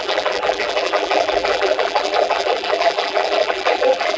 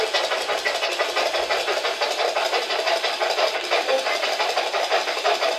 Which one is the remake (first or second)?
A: first